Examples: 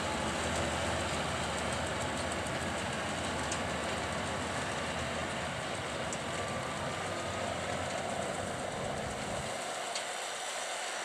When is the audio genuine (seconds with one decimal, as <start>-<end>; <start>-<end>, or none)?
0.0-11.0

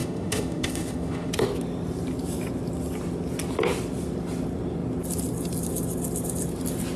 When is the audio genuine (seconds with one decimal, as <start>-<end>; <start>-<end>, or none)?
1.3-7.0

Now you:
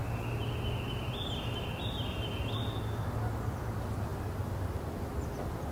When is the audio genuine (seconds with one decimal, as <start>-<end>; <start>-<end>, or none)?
0.0-5.7

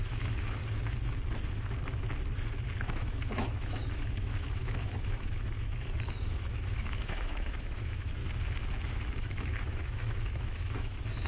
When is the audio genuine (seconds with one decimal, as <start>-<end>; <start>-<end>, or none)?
0.6-2.8; 8.2-8.9

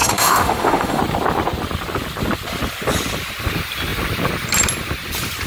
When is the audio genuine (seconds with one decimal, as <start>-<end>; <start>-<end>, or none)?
1.0-5.5

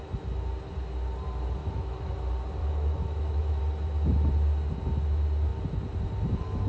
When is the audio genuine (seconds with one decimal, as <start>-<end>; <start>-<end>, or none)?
0.0-1.6; 2.1-2.6; 3.6-6.7

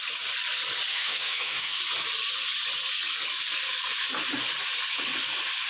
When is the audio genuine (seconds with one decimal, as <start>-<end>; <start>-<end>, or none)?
0.0-0.9; 1.8-5.7

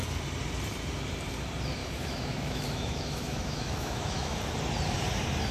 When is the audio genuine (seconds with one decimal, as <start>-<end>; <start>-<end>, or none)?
0.0-1.8; 4.4-5.5